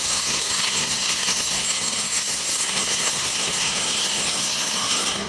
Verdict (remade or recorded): remade